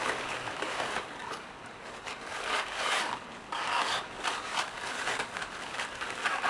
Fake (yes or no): yes